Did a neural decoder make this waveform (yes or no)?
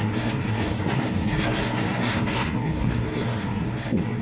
yes